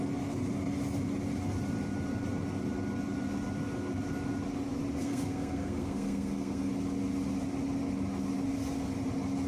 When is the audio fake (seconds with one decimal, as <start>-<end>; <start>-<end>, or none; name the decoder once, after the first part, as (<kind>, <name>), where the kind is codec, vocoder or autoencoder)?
5.0-6.7 (codec, SNAC)